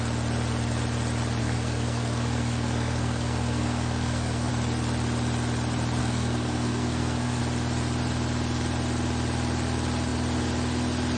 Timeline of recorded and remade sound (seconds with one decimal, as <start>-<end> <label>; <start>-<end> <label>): 0.0-1.4 recorded; 1.4-4.5 remade; 4.5-6.0 recorded; 6.0-7.4 remade; 7.4-11.2 recorded